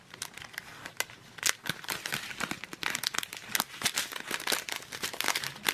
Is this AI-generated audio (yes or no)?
no